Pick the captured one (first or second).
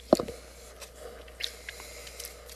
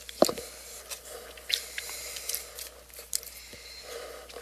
first